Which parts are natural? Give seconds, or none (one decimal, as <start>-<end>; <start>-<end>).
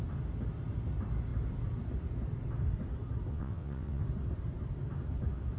0.0-3.3; 4.0-5.6